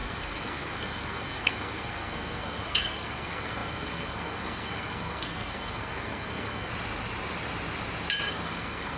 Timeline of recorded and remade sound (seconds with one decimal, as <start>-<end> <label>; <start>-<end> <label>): 0.0-6.7 remade; 6.7-8.3 recorded; 8.3-9.0 remade